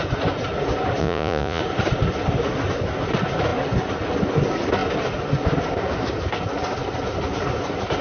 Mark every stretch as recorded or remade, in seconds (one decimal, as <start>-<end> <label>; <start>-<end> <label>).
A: 0.0-1.0 recorded; 1.0-1.6 remade; 1.6-8.0 recorded